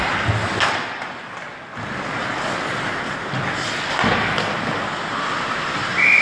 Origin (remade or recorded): recorded